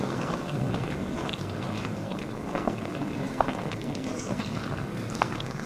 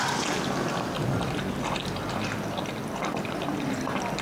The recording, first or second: second